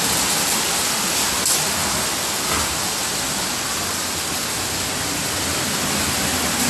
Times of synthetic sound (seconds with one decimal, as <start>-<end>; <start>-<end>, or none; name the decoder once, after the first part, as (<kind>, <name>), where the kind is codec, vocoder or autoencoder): none